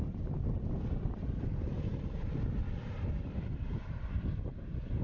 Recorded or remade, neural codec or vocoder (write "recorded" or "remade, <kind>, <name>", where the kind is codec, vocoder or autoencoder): remade, vocoder, BigVGAN v2